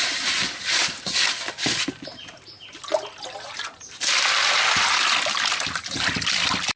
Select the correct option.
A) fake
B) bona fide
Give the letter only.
B